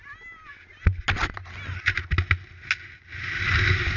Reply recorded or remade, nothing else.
recorded